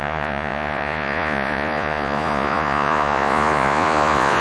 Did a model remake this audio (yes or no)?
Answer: yes